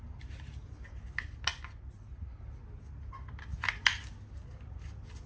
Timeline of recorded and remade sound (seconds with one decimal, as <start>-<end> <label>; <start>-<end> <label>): 0.0-5.3 recorded